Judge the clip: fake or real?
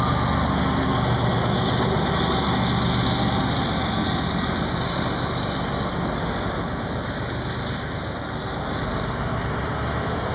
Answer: real